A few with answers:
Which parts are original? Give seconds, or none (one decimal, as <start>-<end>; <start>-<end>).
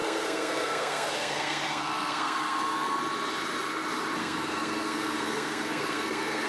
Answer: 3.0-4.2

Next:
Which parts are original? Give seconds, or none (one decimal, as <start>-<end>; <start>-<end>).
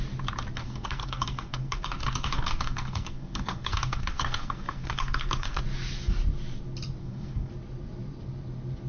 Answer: 0.0-0.6; 5.6-7.0; 7.5-8.9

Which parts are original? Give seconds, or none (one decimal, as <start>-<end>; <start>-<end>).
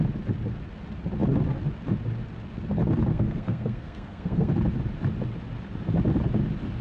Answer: 0.0-3.1; 4.5-6.8